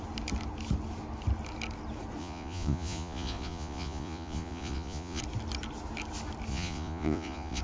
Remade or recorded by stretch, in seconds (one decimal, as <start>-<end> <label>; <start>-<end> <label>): 0.0-2.2 recorded; 2.2-5.2 remade; 5.2-6.5 recorded; 6.5-7.6 remade